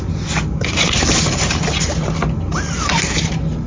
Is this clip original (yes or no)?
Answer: yes